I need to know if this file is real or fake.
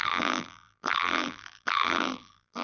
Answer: fake